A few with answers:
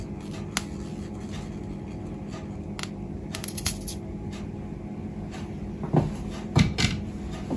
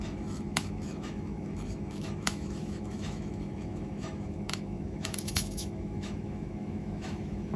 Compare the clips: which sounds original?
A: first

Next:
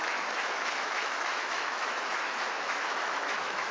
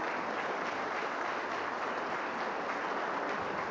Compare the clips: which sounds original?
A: second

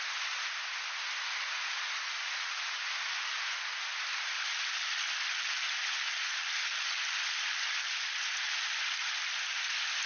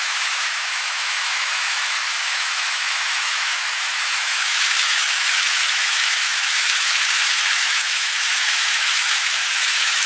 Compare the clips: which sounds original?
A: first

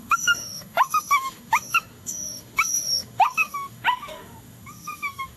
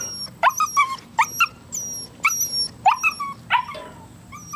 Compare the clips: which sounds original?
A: second